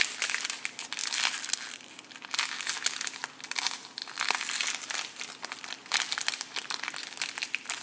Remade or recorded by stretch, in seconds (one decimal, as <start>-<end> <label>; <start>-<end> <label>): 0.0-1.0 recorded; 1.0-1.9 remade; 1.9-4.0 recorded; 4.0-4.7 remade; 4.7-5.8 recorded; 5.8-6.4 remade; 6.4-7.8 recorded